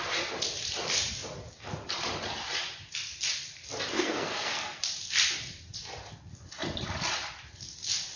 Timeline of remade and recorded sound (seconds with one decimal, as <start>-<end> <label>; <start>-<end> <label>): 0.0-3.9 recorded; 3.9-4.8 remade; 4.8-8.2 recorded